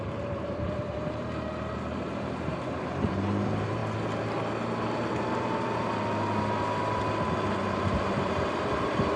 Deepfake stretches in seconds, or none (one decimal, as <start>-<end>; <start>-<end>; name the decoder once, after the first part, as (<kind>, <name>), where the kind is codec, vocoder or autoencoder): 0.0-3.8 (vocoder, BigVGAN v2); 7.8-9.2